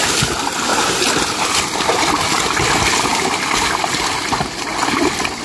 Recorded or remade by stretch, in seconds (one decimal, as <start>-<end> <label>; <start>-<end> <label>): 0.0-5.4 recorded

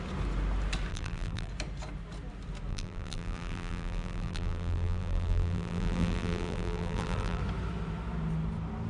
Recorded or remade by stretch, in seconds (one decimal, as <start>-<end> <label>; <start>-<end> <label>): 0.0-0.9 recorded; 0.9-1.5 remade; 1.5-2.7 recorded; 2.7-7.4 remade; 7.4-8.9 recorded